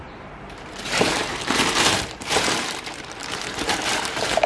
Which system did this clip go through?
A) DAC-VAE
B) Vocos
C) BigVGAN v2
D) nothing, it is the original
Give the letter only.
C